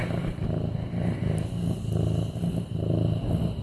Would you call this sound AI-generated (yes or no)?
no